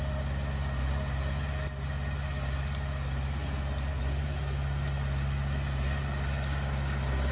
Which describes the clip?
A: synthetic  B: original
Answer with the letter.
B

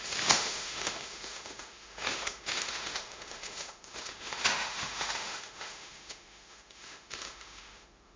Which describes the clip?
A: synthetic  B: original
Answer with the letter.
A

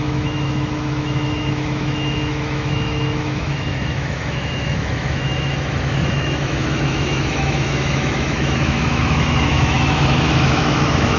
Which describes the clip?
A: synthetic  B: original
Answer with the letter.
A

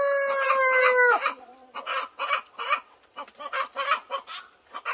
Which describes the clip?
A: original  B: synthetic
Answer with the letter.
A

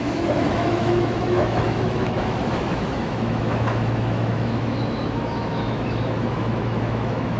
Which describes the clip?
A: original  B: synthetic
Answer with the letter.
B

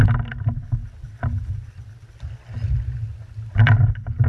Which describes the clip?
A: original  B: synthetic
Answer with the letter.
A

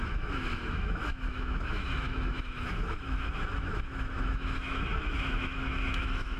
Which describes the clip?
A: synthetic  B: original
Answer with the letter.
A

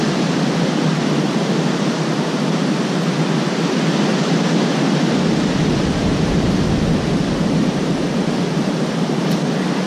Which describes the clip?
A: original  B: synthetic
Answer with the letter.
A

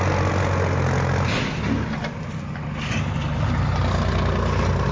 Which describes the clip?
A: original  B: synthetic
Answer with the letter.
A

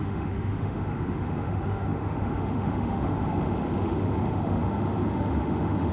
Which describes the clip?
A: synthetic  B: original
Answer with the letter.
A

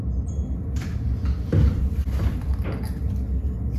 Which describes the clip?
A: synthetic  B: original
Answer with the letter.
B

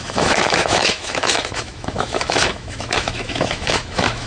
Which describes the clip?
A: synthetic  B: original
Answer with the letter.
A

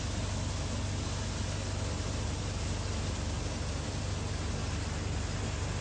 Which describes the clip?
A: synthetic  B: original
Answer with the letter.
B